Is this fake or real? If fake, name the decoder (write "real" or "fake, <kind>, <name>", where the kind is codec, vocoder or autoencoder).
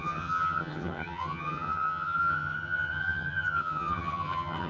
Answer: fake, vocoder, HiFi-GAN